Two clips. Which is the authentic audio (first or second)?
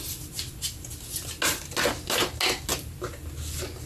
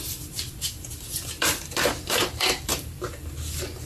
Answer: first